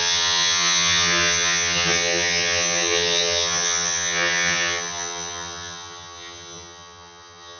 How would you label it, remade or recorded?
remade